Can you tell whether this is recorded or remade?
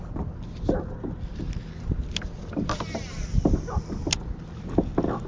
recorded